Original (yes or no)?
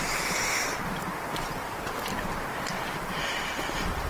no